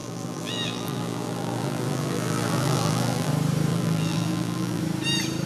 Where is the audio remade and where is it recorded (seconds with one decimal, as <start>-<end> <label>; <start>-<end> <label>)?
0.0-3.3 remade; 3.3-3.7 recorded; 3.7-4.8 remade; 4.8-5.5 recorded